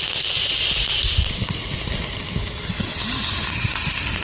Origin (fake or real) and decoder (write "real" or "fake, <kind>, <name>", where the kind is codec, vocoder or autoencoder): real